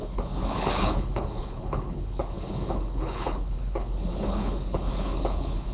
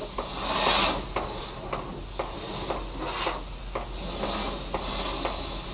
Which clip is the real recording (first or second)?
second